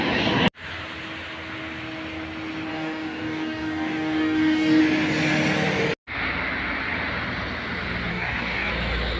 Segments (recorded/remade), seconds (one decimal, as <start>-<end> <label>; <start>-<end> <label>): 0.0-2.7 recorded; 2.7-4.8 remade; 4.8-8.1 recorded; 8.1-8.7 remade; 8.7-9.2 recorded